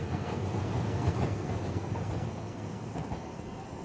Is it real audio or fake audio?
fake